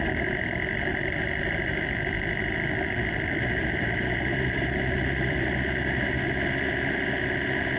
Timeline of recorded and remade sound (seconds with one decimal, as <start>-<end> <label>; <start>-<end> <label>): 0.0-4.3 recorded; 4.3-6.3 remade; 6.3-7.8 recorded